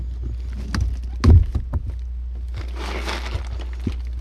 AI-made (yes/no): no